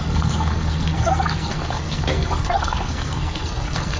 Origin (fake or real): fake